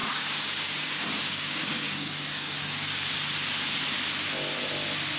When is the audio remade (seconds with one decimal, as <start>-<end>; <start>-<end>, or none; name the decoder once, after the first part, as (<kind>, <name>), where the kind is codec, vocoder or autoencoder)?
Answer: 0.0-3.1 (codec, DAC)